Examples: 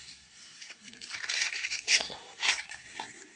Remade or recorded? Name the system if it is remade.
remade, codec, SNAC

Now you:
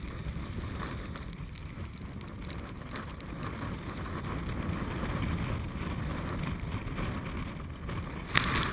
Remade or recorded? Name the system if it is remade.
recorded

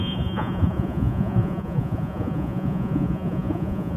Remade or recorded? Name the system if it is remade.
remade, vocoder, Vocos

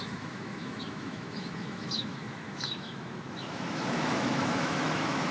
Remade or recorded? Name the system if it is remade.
remade, autoencoder, DAC-VAE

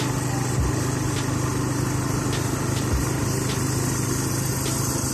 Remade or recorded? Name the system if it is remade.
recorded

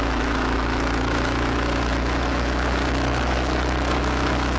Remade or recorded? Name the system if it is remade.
remade, autoencoder, DAC-VAE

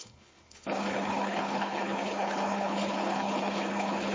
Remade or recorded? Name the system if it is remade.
remade, codec, HILCodec